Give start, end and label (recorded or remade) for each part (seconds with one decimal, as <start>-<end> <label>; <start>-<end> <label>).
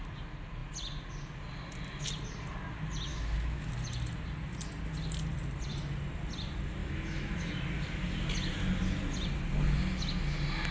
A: 0.0-3.1 recorded; 3.1-3.7 remade; 3.7-6.8 recorded; 6.8-7.5 remade; 7.5-10.7 recorded